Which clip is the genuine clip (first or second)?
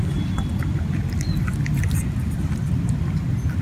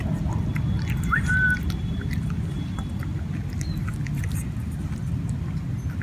second